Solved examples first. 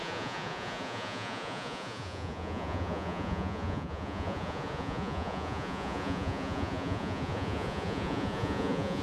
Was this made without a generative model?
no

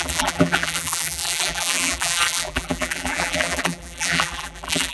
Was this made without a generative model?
no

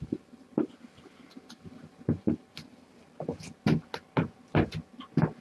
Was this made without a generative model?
yes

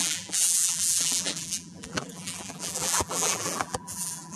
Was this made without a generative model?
no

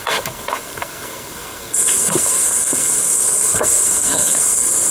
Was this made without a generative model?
no